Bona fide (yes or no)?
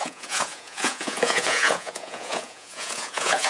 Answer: no